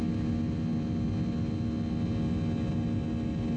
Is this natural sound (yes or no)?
yes